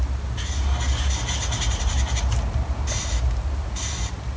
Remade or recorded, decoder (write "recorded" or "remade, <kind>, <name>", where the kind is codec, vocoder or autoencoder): recorded